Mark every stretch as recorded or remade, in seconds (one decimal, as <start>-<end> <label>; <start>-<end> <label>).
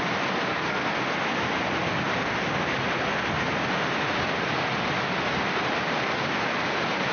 0.0-0.5 recorded; 0.5-1.0 remade; 1.0-7.1 recorded